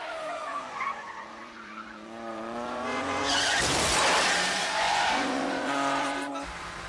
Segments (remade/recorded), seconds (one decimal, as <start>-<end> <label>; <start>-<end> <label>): 0.0-0.5 recorded; 0.5-3.6 remade; 3.6-4.6 recorded; 4.6-6.3 remade; 6.3-6.9 recorded